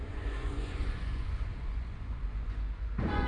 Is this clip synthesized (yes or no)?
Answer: yes